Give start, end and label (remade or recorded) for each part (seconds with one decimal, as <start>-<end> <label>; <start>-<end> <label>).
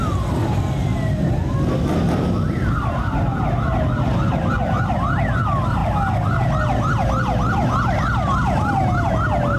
0.0-9.6 recorded